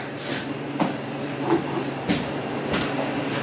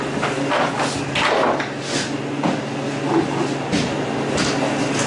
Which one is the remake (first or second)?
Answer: first